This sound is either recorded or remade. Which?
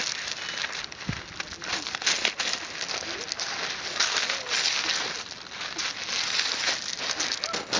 recorded